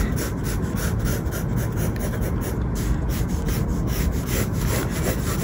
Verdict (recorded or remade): recorded